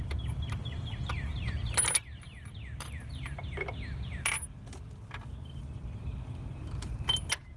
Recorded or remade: recorded